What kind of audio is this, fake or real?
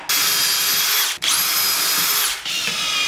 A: real